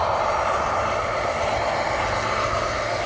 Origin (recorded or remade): recorded